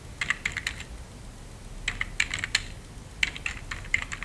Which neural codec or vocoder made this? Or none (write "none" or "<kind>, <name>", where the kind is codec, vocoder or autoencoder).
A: none